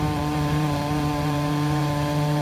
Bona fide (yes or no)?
no